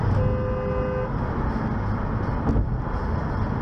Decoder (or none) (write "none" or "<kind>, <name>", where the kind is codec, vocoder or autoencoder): none